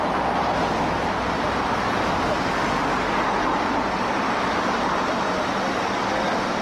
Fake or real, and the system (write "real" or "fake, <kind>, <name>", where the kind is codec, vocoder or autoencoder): real